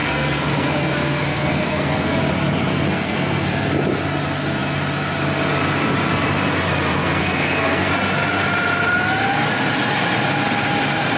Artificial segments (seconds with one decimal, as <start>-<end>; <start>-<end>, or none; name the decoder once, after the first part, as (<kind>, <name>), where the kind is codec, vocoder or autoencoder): 0.0-2.2 (codec, SNAC); 2.7-3.7; 7.0-7.9